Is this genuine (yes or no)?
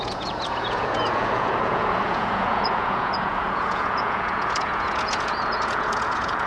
no